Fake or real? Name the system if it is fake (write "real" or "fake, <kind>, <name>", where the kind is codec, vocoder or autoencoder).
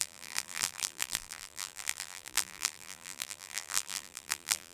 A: fake, vocoder, BigVGAN v2